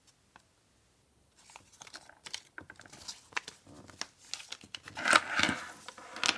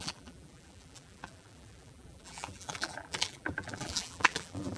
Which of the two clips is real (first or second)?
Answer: first